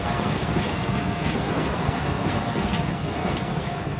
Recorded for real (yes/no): no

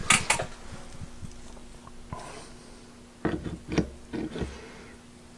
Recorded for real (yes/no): yes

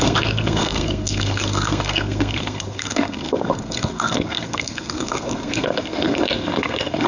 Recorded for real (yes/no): no